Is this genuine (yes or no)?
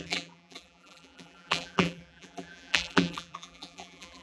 no